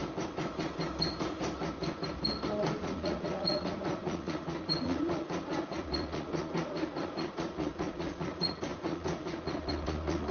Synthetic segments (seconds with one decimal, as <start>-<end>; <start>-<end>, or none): 2.8-10.3